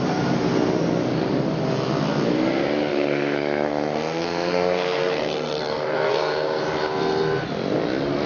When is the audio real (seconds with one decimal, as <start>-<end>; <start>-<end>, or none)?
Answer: 0.0-2.9; 6.6-8.3